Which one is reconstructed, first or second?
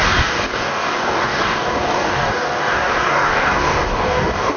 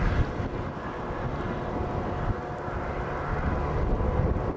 first